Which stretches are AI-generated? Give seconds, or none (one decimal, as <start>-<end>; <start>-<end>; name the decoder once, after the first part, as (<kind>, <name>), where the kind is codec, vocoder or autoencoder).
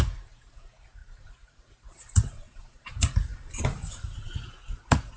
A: 0.0-3.3 (vocoder, Vocos); 3.9-5.2